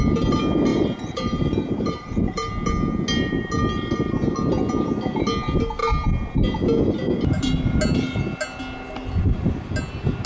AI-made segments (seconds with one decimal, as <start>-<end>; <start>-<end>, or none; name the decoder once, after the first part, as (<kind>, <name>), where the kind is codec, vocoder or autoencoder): 0.7-2.5 (vocoder, BigVGAN v2)